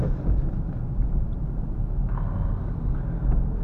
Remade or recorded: recorded